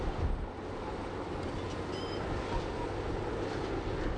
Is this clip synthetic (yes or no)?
no